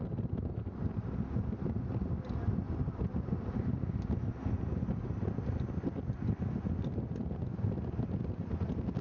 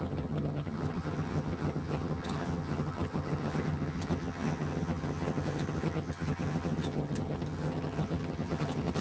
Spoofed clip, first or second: second